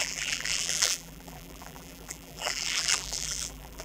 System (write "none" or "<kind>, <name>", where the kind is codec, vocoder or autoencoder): vocoder, BigVGAN v2